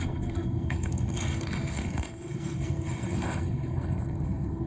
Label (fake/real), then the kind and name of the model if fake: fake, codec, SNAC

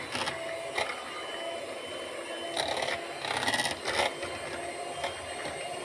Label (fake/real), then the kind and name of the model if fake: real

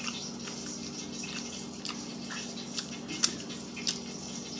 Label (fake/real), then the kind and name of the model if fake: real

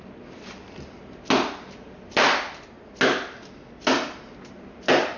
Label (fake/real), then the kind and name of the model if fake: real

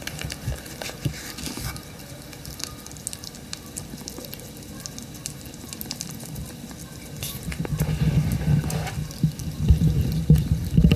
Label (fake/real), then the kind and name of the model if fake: real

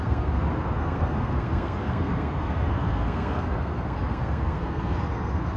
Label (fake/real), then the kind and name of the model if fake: fake, codec, SNAC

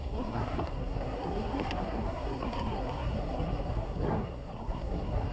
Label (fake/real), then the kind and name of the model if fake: fake, codec, SNAC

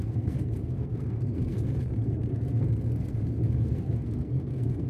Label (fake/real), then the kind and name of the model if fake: fake, codec, SNAC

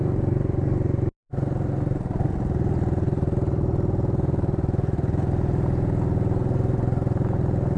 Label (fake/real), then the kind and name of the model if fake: real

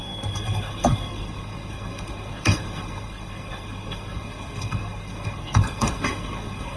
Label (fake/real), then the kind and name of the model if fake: fake, codec, SNAC